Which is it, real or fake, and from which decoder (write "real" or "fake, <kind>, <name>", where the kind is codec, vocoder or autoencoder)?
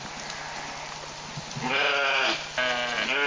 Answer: real